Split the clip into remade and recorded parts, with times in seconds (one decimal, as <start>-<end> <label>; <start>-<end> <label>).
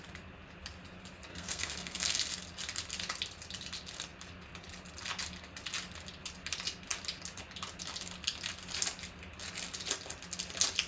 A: 0.0-1.3 recorded; 1.3-2.2 remade; 2.2-10.9 recorded